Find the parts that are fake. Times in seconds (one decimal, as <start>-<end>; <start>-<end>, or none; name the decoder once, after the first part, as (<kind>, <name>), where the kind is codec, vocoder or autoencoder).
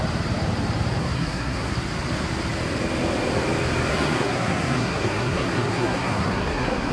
1.0-1.7 (codec, SNAC); 3.9-6.9